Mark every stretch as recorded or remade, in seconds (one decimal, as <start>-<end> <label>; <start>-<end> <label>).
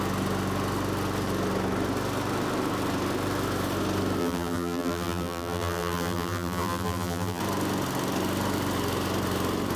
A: 0.0-4.2 recorded; 4.2-7.4 remade; 7.4-9.8 recorded